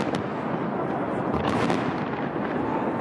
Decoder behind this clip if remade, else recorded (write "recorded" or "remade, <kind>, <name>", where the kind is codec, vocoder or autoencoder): recorded